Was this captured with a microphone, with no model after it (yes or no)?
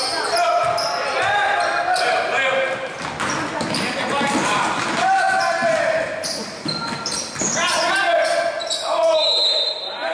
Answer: yes